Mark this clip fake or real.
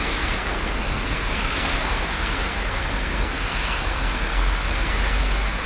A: fake